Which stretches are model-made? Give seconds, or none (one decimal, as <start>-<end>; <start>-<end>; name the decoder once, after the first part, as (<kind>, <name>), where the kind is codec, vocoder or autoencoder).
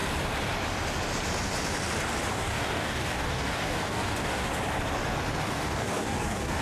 2.3-4.5 (codec, DAC); 5.4-6.6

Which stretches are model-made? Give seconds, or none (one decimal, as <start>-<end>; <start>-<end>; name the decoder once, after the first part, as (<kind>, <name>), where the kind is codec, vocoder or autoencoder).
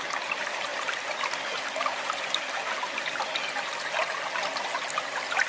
none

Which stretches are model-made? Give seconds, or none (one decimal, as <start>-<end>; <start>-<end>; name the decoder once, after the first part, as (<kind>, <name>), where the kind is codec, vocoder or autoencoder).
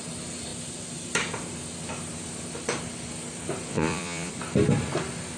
3.7-4.3 (vocoder, Vocos)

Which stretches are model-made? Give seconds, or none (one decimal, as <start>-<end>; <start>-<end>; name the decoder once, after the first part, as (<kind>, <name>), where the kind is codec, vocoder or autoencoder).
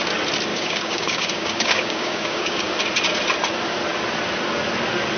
0.5-2.7 (codec, DAC)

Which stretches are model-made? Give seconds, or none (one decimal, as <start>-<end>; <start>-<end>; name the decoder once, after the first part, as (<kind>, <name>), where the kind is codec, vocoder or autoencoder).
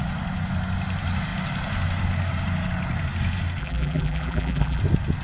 3.6-4.8 (vocoder, BigVGAN v2)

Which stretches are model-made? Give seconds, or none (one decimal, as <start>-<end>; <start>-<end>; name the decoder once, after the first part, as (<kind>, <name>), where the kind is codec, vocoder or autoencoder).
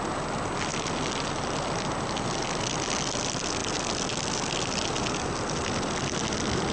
none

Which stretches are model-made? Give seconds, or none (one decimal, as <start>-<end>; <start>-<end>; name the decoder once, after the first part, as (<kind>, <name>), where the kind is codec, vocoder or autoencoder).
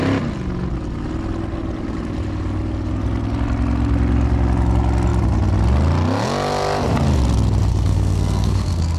7.7-9.0 (codec, SNAC)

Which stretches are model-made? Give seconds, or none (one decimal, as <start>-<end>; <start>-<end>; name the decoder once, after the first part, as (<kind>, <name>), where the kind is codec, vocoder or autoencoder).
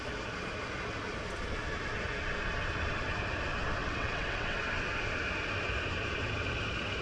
3.8-4.6 (vocoder, WaveNeXt)